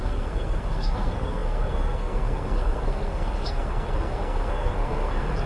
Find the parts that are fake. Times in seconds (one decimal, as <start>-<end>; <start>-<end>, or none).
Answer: 0.0-5.5